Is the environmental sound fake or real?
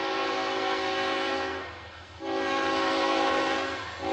fake